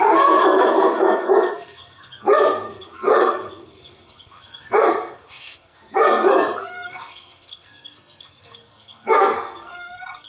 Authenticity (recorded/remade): remade